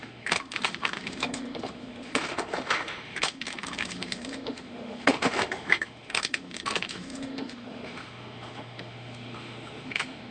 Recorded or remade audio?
remade